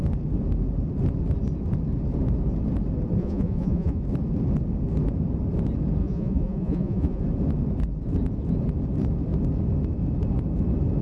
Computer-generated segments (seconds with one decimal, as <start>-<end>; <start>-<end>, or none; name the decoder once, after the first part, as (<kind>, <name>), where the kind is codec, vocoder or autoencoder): 3.2-4.0 (vocoder, Vocos); 6.0-7.2

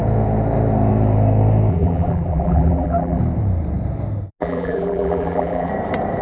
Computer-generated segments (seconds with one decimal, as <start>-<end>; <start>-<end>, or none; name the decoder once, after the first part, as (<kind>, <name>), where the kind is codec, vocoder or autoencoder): 1.7-3.2 (vocoder, BigVGAN v2); 4.4-5.7